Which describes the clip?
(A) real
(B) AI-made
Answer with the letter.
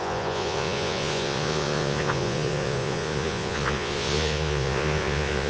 B